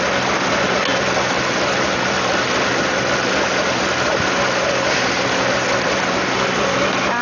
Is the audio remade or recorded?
recorded